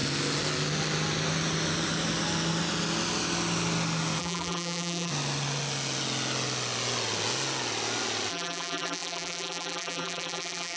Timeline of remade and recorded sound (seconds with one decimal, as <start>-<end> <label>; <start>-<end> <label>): 0.0-4.2 recorded; 4.2-5.1 remade; 5.1-8.3 recorded; 8.3-10.8 remade